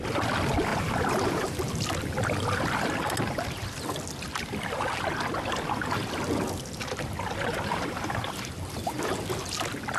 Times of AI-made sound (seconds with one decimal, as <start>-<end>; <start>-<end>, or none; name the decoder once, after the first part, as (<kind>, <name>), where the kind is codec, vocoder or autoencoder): none